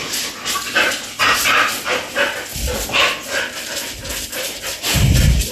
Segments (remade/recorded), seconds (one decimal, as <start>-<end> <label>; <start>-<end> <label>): 0.0-5.5 recorded